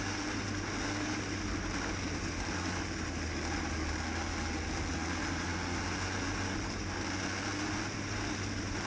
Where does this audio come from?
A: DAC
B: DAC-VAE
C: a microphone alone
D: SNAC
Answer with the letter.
C